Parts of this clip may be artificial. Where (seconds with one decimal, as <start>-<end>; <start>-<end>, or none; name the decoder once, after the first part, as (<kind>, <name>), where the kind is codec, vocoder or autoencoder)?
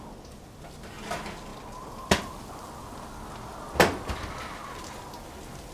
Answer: none